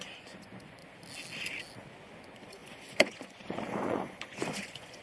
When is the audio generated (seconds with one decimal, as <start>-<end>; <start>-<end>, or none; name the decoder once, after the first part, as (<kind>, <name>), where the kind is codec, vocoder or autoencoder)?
0.0-0.8 (vocoder, Vocos); 1.9-5.0